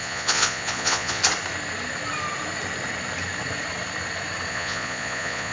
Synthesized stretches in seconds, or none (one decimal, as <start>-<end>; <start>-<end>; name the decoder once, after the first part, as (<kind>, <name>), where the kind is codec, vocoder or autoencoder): 0.0-1.2 (vocoder, Vocos); 4.5-5.5